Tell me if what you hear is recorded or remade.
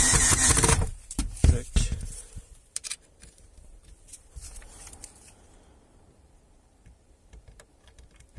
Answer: remade